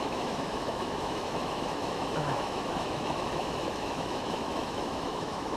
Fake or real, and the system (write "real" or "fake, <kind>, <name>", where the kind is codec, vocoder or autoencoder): fake, autoencoder, DAC-VAE